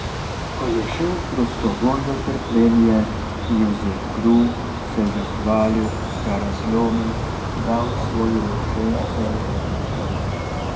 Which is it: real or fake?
real